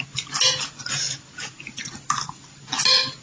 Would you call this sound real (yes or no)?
yes